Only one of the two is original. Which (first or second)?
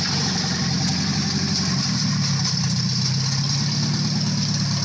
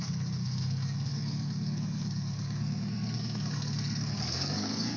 first